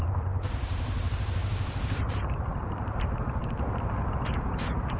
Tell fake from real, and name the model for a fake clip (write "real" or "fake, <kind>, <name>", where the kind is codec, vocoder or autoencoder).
fake, vocoder, BigVGAN v2